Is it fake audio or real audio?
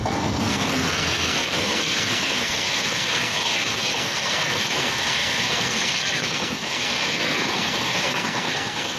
fake